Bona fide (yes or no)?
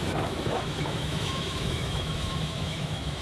no